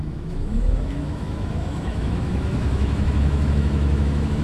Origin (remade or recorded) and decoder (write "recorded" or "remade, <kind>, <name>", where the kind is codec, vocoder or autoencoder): remade, autoencoder, DAC-VAE